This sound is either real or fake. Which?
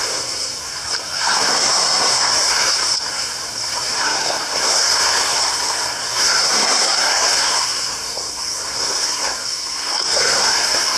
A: fake